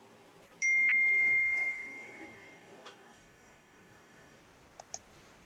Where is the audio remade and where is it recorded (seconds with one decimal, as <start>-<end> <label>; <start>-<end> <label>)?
0.0-1.2 recorded; 1.2-4.4 remade; 4.4-5.4 recorded